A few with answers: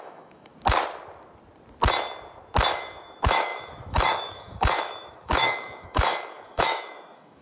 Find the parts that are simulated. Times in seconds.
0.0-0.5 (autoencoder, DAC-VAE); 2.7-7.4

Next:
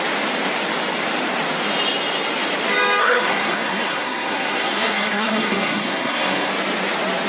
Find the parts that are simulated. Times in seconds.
3.0-6.5 (codec, SNAC)

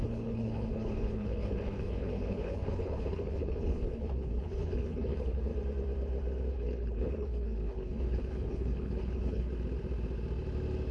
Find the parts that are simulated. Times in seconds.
0.0-5.5 (codec, HILCodec); 6.5-9.5

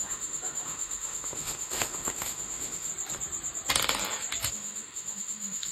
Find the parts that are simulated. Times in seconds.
0.0-2.9 (autoencoder, DAC-VAE); 4.5-5.7

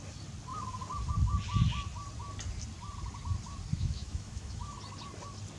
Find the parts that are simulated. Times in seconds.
3.7-4.8 (autoencoder, DAC-VAE)

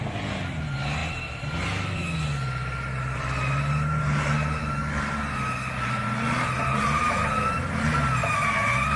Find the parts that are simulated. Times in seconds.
none

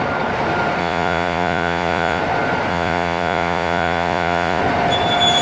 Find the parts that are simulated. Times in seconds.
0.8-2.2 (vocoder, Vocos); 2.7-4.6